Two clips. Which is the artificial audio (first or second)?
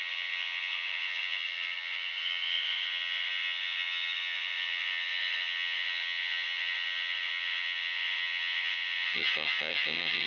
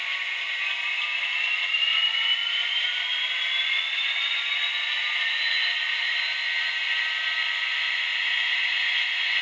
first